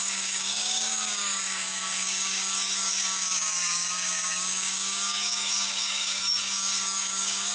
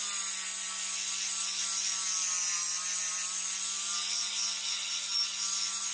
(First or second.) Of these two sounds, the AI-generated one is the first